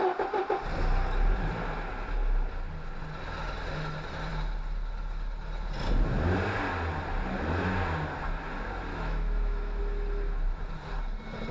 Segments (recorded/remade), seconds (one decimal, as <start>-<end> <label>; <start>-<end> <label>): 0.0-8.9 recorded; 8.9-9.8 remade; 9.8-11.5 recorded